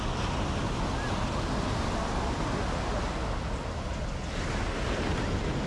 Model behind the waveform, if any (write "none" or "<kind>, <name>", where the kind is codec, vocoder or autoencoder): none